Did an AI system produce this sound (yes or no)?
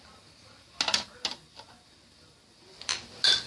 no